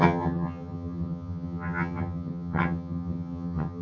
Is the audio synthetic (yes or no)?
yes